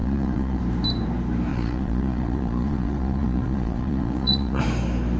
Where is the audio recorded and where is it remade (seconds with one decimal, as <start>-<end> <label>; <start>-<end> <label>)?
0.0-0.6 remade; 0.6-1.5 recorded; 1.5-4.6 remade; 4.6-5.2 recorded

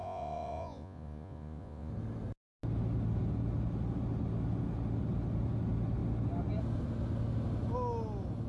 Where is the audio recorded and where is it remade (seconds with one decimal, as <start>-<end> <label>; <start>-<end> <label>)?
0.0-1.9 remade; 1.9-8.5 recorded

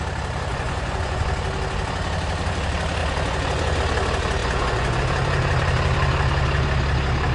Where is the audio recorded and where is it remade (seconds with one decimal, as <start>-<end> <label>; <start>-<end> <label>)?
0.0-0.5 recorded; 0.5-1.3 remade; 1.3-3.0 recorded; 3.0-3.8 remade; 3.8-4.4 recorded; 4.4-5.0 remade; 5.0-7.3 recorded

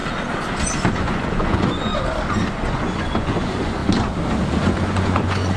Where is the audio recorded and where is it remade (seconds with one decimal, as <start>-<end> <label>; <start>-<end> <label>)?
0.0-0.9 recorded; 0.9-1.9 remade; 1.9-2.5 recorded; 2.5-3.8 remade; 3.8-4.6 recorded; 4.6-5.6 remade

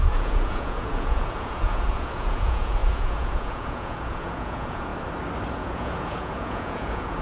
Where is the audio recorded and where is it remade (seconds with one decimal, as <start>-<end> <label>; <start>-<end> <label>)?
0.0-4.9 remade; 4.9-5.5 recorded; 5.5-7.2 remade

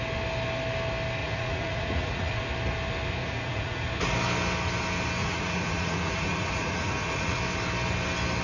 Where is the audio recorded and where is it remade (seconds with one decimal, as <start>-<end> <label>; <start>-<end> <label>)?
0.0-1.2 recorded; 1.2-2.4 remade; 2.4-3.2 recorded; 3.2-3.9 remade; 3.9-5.2 recorded; 5.2-7.4 remade; 7.4-8.4 recorded

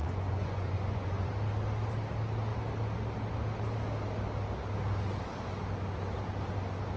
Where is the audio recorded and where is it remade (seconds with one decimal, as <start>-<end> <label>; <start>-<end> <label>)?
0.0-1.3 remade; 1.3-7.0 recorded

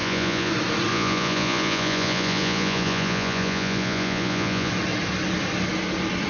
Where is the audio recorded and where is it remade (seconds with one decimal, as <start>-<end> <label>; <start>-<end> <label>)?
0.0-0.5 remade; 0.5-0.9 recorded; 0.9-4.7 remade; 4.7-6.3 recorded